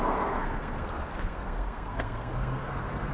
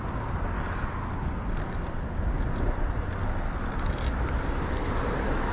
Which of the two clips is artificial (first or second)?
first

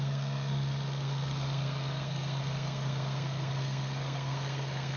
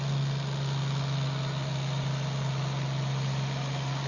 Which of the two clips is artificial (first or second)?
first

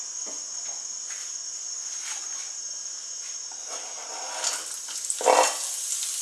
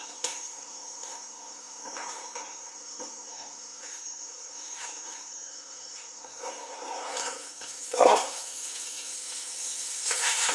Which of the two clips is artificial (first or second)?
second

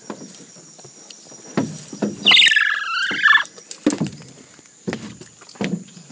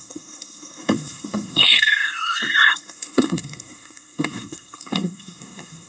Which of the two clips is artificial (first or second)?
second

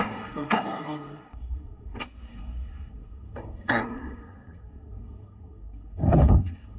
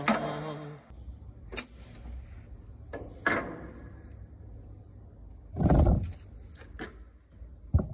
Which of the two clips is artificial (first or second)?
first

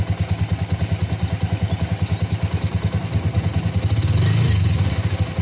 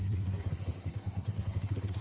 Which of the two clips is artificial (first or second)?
second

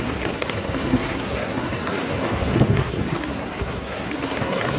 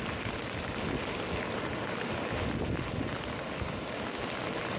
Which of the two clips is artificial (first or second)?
first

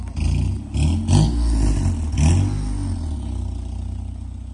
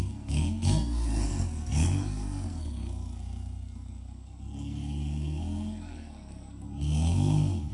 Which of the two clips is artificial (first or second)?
second